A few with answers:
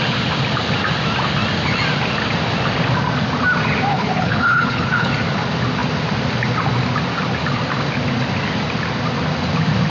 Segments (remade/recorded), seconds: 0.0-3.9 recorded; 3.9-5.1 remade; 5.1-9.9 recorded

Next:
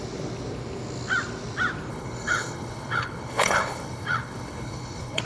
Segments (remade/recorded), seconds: 0.0-1.9 recorded; 1.9-5.2 remade